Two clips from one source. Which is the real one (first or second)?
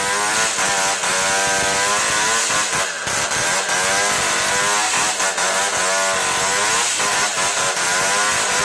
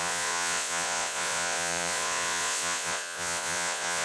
first